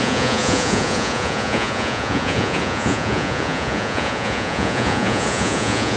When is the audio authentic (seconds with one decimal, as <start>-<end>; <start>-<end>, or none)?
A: none